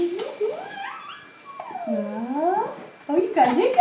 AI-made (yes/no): no